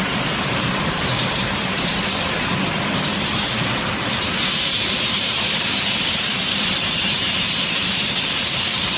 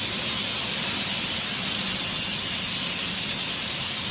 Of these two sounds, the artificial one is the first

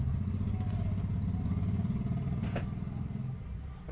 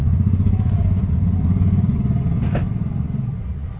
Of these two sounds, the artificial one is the second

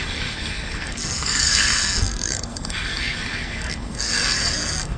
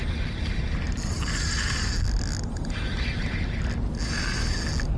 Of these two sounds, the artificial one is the first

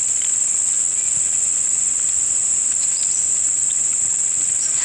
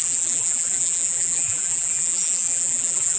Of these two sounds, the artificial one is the second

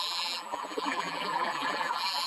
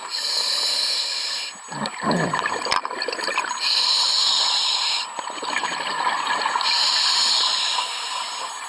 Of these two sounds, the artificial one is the first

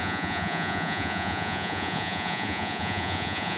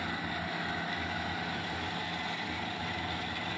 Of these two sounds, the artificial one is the first